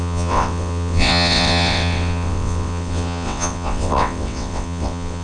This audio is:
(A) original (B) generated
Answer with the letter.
B